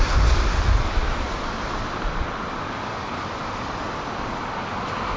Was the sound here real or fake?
real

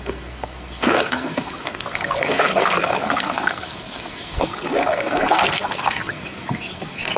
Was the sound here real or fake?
fake